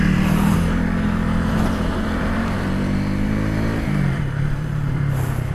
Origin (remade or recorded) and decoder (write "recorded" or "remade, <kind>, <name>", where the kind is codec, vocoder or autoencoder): remade, vocoder, BigVGAN v2